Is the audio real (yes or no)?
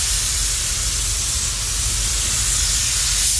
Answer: yes